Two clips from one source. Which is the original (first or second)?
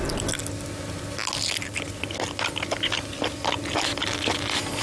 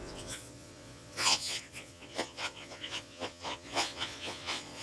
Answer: first